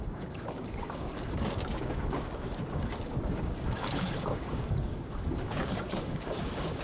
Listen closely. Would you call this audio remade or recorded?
remade